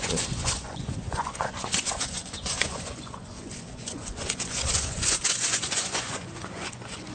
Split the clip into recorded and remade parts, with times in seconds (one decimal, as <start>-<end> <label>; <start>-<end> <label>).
0.0-7.1 remade